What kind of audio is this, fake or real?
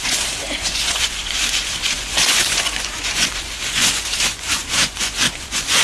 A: fake